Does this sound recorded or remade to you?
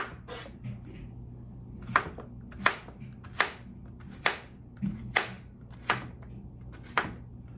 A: recorded